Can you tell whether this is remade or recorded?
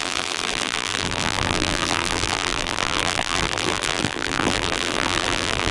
remade